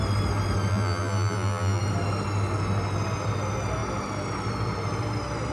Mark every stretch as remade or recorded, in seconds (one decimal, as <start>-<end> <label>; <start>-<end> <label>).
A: 0.0-0.7 recorded; 0.7-1.8 remade; 1.8-5.5 recorded